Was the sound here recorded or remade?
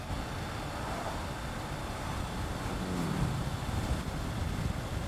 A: recorded